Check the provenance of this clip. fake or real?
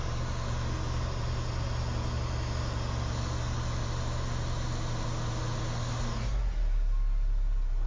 real